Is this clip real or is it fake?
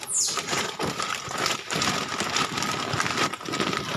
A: real